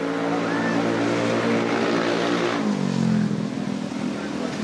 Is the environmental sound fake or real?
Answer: real